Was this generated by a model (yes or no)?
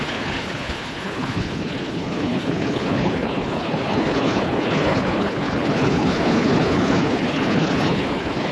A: yes